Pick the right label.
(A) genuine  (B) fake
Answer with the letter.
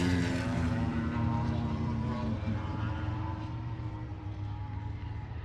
B